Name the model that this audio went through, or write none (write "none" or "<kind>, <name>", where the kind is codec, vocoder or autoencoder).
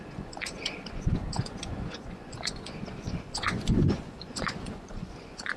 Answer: vocoder, Vocos